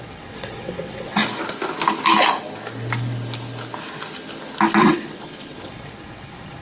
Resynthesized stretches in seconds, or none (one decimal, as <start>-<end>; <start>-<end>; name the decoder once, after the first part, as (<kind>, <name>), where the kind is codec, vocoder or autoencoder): 0.0-1.2 (vocoder, WaveNeXt); 4.8-6.6

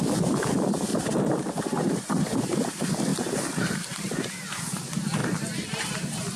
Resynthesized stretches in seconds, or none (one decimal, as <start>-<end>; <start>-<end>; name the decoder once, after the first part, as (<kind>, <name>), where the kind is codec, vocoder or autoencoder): 0.9-2.3 (vocoder, BigVGAN v2); 3.1-4.2; 5.2-5.9